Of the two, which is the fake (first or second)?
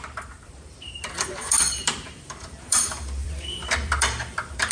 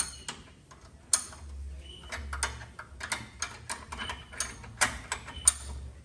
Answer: first